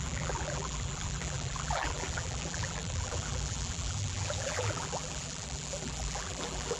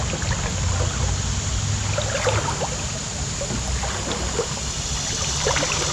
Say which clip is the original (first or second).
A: second